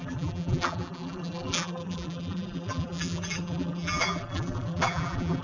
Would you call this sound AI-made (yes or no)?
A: yes